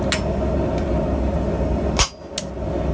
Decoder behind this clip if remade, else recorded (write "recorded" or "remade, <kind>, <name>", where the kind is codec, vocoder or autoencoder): recorded